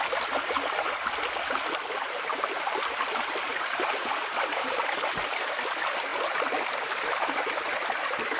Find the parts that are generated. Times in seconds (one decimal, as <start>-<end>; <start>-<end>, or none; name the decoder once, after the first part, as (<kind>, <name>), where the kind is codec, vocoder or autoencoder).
3.5-4.9 (vocoder, BigVGAN v2)